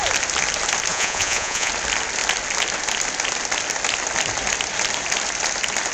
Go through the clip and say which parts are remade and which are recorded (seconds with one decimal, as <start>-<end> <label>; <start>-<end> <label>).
0.0-0.9 recorded; 0.9-1.7 remade; 1.7-5.9 recorded